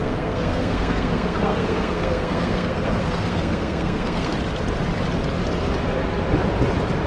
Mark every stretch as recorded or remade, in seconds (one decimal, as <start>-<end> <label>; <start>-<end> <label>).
0.0-4.3 remade; 4.3-7.1 recorded